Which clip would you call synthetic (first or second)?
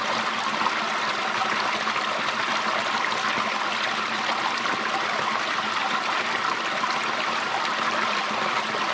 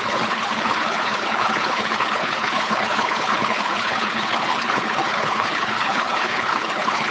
second